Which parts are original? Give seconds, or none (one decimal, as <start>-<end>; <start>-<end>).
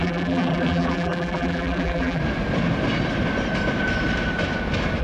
2.2-5.0